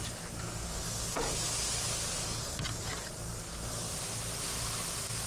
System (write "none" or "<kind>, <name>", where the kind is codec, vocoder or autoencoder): none